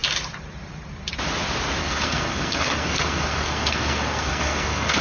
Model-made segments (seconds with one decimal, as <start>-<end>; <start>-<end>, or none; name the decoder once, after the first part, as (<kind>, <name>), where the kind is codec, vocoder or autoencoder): 1.8-5.0 (codec, SNAC)